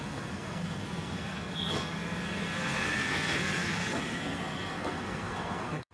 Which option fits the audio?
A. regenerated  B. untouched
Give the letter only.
A